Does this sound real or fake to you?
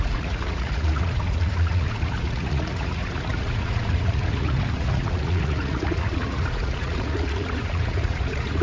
fake